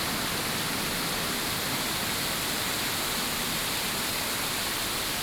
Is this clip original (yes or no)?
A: yes